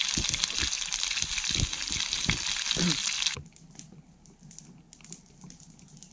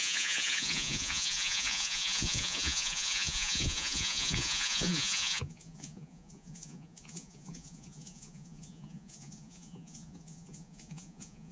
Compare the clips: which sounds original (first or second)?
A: first